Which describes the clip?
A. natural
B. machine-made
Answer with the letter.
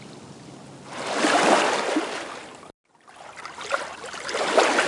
A